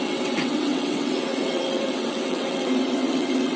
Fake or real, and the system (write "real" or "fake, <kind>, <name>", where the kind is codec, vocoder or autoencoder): fake, vocoder, WaveNeXt